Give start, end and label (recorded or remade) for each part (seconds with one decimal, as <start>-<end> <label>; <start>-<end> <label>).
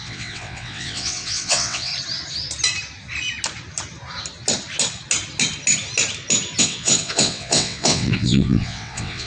0.0-1.9 remade; 1.9-6.6 recorded; 6.6-9.3 remade